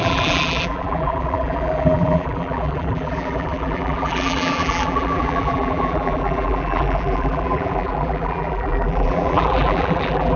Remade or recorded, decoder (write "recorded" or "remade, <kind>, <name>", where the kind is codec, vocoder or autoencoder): remade, vocoder, BigVGAN v2